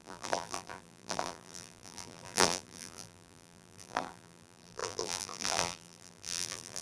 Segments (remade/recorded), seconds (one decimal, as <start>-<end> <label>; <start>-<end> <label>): 0.0-6.8 remade